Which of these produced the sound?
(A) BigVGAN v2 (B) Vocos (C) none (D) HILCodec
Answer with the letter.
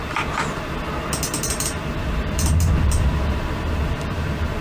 C